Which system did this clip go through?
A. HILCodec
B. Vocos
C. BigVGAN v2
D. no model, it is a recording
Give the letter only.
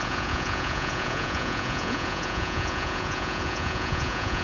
B